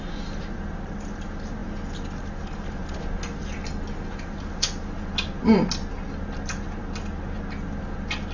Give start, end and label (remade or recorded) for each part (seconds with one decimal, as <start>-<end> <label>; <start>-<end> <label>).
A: 0.0-8.3 recorded